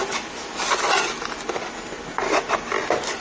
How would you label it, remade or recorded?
recorded